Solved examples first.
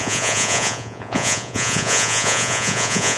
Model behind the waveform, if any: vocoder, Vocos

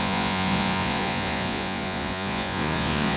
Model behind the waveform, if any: vocoder, Vocos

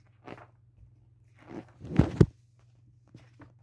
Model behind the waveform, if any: none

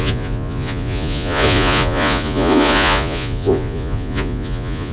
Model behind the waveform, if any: vocoder, Vocos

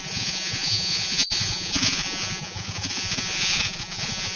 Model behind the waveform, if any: vocoder, Vocos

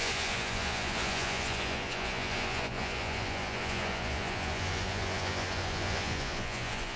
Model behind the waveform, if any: vocoder, Vocos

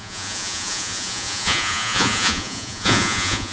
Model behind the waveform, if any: vocoder, Vocos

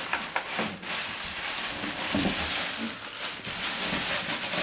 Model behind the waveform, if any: none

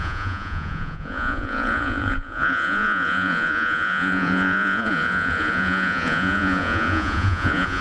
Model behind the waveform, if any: vocoder, Vocos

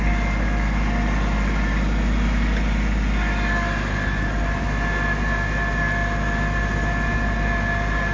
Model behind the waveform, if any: none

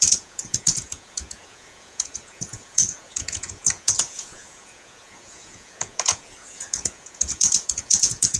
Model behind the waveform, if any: vocoder, Vocos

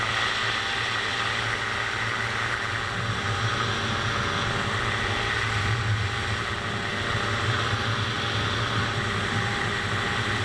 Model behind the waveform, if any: none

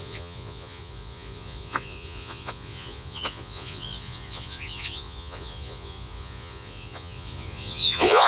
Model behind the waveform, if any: vocoder, Vocos